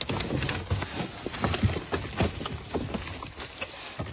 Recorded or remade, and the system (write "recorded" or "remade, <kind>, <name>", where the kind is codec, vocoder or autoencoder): recorded